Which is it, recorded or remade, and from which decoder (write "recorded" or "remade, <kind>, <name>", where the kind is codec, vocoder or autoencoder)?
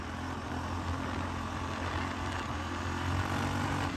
recorded